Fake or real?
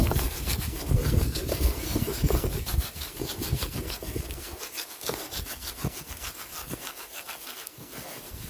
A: fake